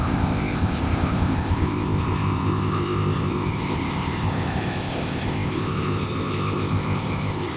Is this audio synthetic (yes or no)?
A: yes